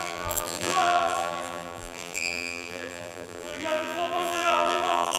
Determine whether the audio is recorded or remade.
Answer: remade